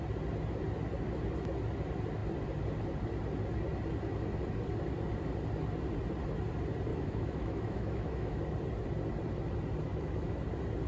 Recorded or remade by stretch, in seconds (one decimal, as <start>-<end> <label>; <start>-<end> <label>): 0.0-6.9 recorded; 6.9-8.4 remade; 8.4-9.9 recorded; 9.9-10.4 remade; 10.4-10.9 recorded